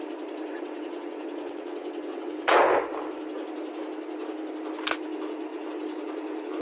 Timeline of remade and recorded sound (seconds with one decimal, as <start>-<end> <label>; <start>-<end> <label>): 0.0-0.5 recorded; 0.5-2.6 remade; 2.6-6.6 recorded